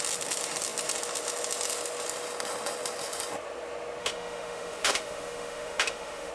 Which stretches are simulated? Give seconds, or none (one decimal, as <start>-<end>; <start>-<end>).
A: 4.0-6.3